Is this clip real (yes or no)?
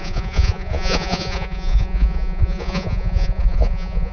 no